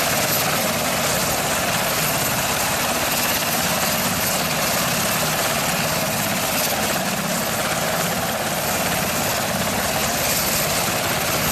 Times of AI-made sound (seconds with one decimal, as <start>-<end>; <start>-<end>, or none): none